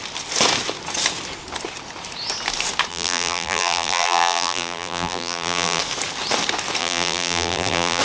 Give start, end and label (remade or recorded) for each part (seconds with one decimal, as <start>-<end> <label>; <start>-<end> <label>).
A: 0.0-2.9 recorded; 2.9-5.8 remade; 5.8-6.8 recorded; 6.8-8.0 remade